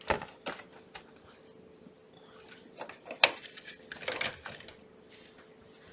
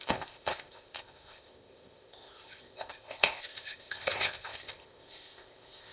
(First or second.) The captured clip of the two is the first